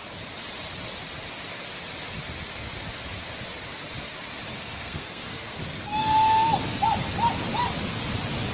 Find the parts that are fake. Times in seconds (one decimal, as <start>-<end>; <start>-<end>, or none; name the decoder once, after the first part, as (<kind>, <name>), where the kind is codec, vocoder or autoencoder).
4.5-5.6 (codec, SNAC); 6.0-6.6